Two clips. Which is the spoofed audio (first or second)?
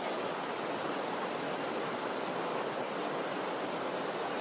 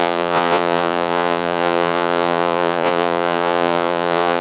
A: second